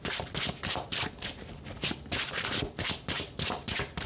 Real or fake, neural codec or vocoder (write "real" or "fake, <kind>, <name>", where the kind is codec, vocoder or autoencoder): real